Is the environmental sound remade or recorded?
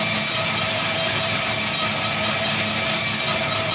recorded